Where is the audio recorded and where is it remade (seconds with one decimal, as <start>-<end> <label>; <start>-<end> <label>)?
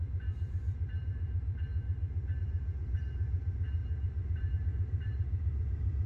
0.0-1.7 remade; 1.7-2.4 recorded; 2.4-6.1 remade